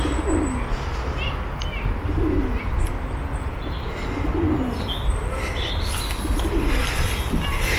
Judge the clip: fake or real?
real